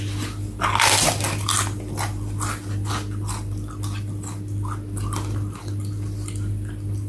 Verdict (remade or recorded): recorded